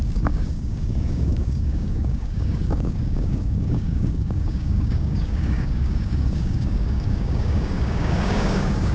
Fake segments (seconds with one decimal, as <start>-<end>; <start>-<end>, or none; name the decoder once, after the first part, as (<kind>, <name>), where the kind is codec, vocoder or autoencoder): 0.0-8.9 (codec, DAC)